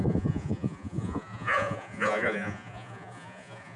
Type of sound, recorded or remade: remade